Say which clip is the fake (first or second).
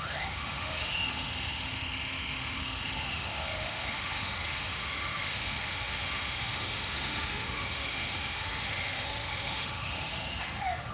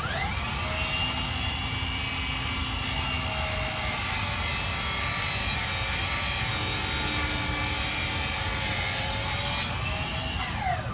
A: first